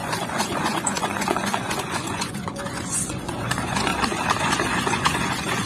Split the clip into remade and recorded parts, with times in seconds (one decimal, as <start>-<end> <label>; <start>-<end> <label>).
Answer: 0.0-3.9 remade; 3.9-4.4 recorded; 4.4-5.7 remade